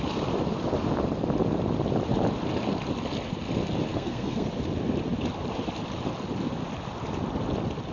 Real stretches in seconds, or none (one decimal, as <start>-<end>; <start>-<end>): 0.0-3.9; 4.5-7.9

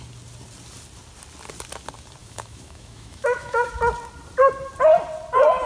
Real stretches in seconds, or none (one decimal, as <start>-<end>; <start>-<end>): 0.0-2.2; 3.7-5.7